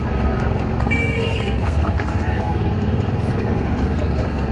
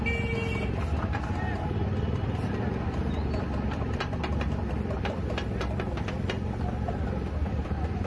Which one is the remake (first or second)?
first